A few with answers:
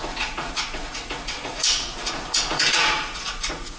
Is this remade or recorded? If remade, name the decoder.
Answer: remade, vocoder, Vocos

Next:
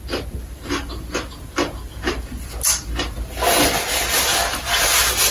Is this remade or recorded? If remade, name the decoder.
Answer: recorded